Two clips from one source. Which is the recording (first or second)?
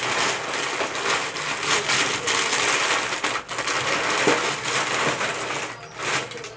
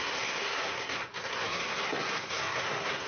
first